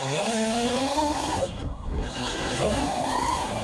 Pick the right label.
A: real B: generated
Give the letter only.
B